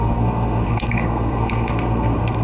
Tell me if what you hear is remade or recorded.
remade